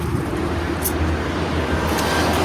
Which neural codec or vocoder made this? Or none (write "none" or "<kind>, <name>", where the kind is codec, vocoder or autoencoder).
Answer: none